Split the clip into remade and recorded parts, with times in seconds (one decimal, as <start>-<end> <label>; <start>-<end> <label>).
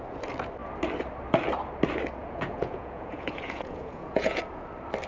0.0-2.2 recorded; 2.2-4.4 remade; 4.4-5.1 recorded